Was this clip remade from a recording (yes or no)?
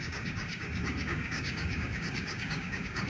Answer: yes